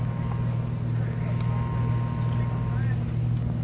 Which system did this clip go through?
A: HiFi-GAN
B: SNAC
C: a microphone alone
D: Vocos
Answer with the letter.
C